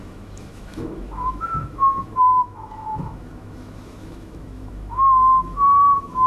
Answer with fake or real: fake